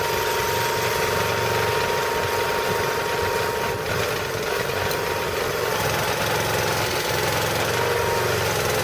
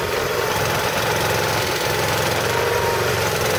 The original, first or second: first